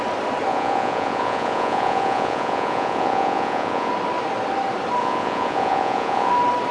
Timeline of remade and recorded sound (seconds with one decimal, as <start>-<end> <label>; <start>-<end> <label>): 0.0-0.5 recorded; 0.5-3.9 remade; 3.9-5.0 recorded; 5.0-6.3 remade; 6.3-6.7 recorded